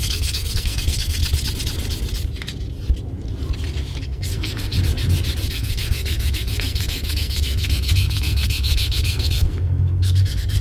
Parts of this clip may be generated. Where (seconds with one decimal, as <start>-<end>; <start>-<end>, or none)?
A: 0.0-1.2; 4.0-4.7; 5.5-10.6